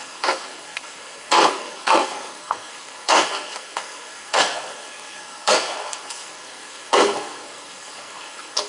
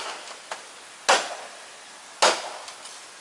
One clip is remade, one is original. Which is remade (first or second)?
first